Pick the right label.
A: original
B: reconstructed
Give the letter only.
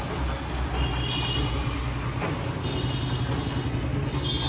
A